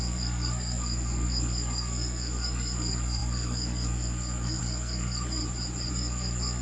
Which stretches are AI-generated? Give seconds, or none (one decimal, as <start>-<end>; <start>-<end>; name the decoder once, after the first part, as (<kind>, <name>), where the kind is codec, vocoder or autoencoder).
0.0-5.4 (codec, SNAC); 5.9-6.6